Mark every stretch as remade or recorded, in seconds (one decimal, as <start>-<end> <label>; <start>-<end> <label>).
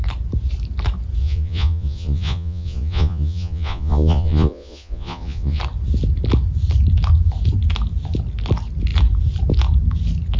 0.0-1.2 recorded; 1.2-5.6 remade; 5.6-10.4 recorded